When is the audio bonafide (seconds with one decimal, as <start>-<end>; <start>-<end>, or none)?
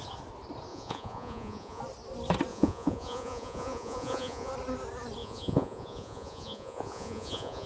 0.0-0.7; 1.8-2.5; 4.5-5.2